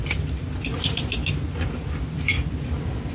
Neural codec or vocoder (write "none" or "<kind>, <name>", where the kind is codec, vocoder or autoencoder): none